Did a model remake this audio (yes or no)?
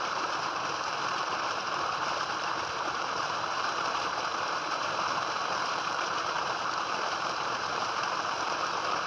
yes